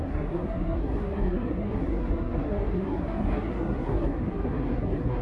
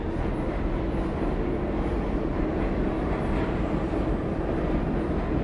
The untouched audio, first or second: second